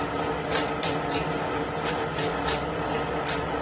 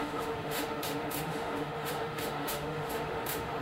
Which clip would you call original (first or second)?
first